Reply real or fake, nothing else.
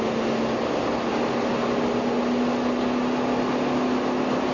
real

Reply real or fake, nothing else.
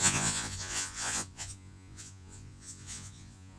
fake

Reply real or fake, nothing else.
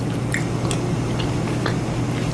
real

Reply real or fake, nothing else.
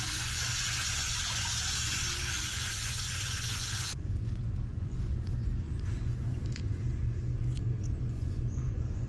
fake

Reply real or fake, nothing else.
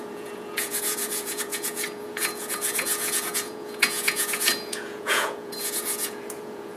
fake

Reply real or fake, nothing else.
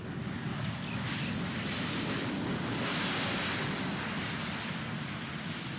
real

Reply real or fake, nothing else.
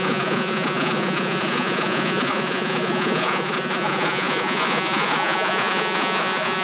fake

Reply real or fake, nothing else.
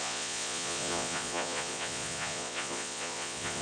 fake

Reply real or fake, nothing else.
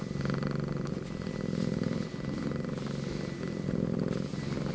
real